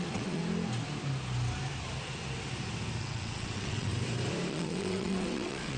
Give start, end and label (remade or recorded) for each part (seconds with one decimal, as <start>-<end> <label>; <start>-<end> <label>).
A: 0.0-0.4 remade; 0.4-3.0 recorded; 3.0-3.9 remade; 3.9-4.5 recorded; 4.5-5.8 remade